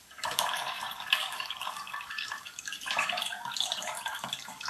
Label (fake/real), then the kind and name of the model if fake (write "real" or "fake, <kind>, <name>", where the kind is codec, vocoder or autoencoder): fake, codec, DAC